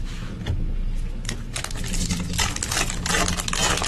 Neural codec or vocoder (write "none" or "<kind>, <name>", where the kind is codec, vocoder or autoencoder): none